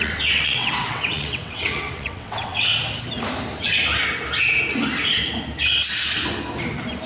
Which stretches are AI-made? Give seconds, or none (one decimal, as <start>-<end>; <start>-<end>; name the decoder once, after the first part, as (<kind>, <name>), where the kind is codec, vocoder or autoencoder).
0.0-2.7 (vocoder, WaveNeXt)